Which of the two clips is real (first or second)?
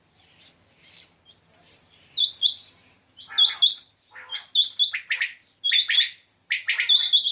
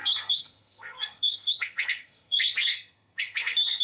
first